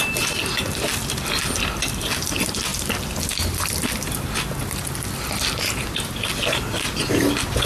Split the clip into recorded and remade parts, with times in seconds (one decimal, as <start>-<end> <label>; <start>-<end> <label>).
0.0-7.7 recorded